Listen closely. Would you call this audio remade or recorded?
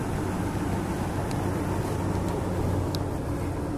recorded